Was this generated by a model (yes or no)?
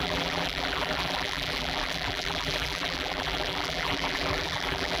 yes